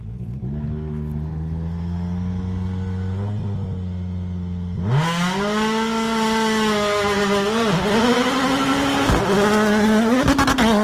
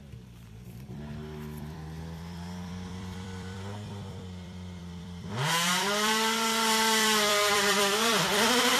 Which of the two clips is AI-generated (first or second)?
second